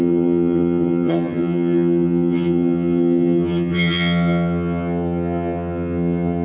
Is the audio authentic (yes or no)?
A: no